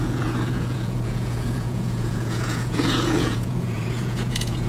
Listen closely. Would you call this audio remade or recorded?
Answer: remade